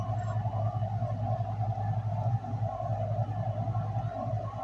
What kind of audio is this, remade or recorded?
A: recorded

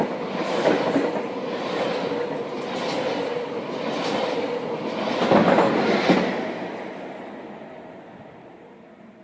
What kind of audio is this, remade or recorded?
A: recorded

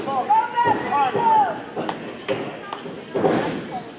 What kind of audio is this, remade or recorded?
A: recorded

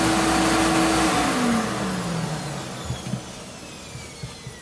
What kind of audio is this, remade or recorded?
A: recorded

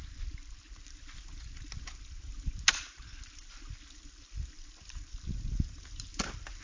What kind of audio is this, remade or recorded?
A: recorded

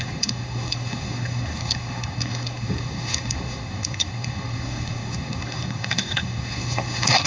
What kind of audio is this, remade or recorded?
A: remade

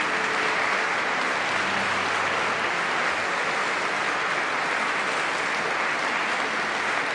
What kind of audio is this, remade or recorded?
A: recorded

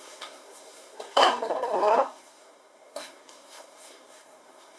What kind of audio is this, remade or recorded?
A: remade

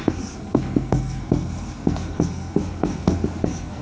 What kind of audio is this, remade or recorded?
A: remade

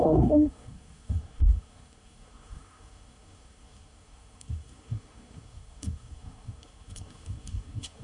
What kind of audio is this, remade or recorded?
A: remade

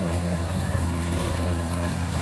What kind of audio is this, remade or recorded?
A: remade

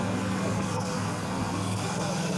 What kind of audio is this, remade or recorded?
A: remade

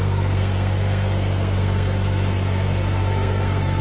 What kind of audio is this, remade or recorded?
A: remade